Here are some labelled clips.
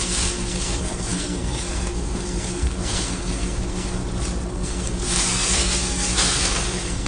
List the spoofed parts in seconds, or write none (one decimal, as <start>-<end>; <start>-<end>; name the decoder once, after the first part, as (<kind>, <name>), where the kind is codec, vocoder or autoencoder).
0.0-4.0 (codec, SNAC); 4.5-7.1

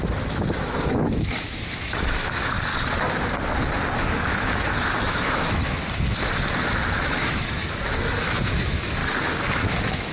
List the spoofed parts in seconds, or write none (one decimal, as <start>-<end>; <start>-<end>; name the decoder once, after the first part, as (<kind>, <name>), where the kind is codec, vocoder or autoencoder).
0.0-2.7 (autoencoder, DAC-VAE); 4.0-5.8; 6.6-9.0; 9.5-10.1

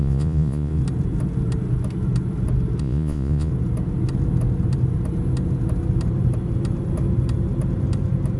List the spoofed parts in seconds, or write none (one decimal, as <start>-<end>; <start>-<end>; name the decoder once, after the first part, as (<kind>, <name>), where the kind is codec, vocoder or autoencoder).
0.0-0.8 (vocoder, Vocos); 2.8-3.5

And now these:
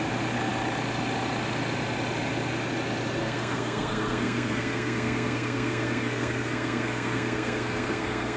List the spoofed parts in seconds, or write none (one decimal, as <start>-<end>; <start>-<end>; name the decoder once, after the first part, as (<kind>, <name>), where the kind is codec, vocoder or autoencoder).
3.2-8.4 (codec, SNAC)

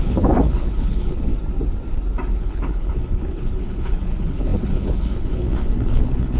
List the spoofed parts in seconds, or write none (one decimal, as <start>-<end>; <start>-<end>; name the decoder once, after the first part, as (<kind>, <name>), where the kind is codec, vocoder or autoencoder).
0.0-1.3 (codec, HILCodec); 2.3-6.4